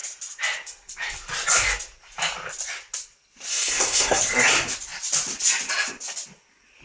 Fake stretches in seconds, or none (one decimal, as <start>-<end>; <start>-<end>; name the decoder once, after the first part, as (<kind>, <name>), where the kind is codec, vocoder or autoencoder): 3.5-4.2 (codec, SNAC)